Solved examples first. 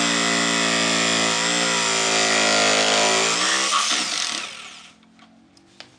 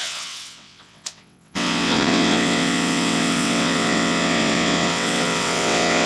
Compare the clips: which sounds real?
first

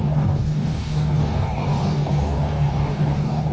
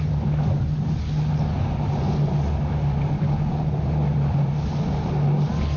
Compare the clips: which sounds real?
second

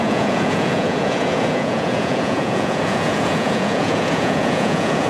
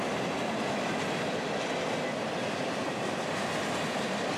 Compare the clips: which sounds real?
second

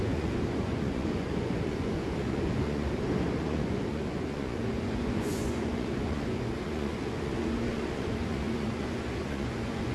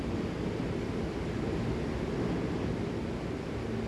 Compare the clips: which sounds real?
second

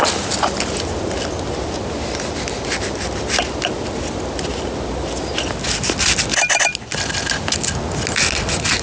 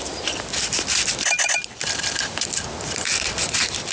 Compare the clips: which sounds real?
first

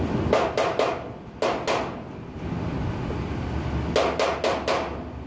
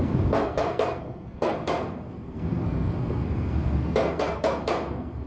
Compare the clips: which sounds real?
first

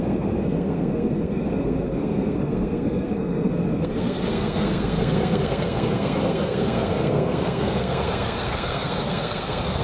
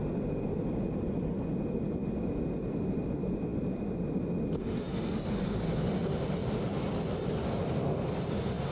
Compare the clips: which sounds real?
second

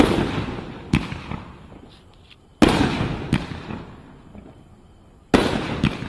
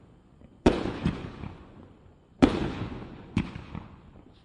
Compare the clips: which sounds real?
first